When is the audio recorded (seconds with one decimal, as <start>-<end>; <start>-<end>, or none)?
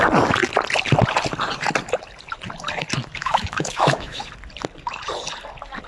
0.0-3.2; 4.2-5.9